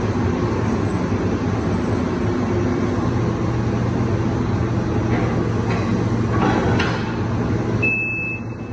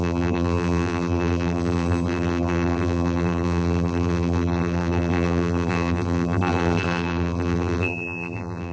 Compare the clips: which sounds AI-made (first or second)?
second